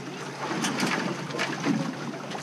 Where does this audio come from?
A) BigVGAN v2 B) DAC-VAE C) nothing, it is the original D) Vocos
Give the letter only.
A